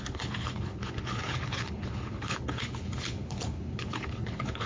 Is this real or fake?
fake